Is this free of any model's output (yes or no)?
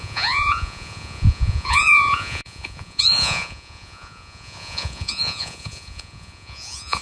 no